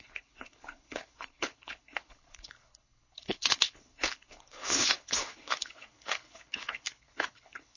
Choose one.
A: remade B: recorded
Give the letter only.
A